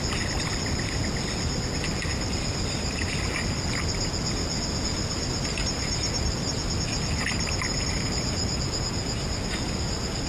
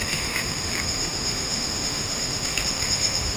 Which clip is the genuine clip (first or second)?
first